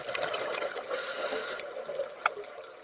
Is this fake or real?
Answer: real